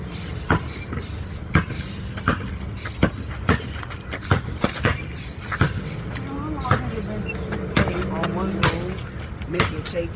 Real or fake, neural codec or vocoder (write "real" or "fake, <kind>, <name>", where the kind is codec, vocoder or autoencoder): real